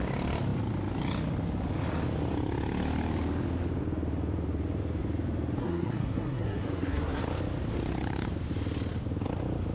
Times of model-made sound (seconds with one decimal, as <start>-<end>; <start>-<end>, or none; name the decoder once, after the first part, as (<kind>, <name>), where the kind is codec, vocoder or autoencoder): 5.6-7.2 (codec, SNAC)